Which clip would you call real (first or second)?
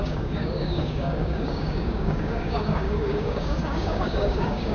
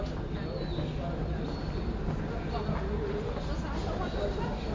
second